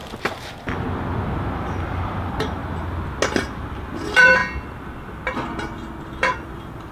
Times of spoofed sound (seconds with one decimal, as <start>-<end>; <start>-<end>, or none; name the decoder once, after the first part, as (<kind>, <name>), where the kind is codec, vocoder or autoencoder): 1.5-2.6 (vocoder, BigVGAN v2); 3.6-4.4; 6.4-6.9